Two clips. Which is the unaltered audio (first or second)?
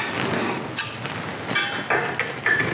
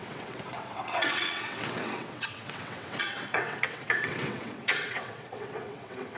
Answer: first